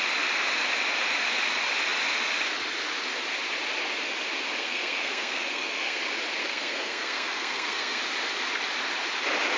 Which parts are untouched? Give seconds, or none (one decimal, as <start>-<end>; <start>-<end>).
0.0-4.6; 6.0-6.4; 8.0-9.6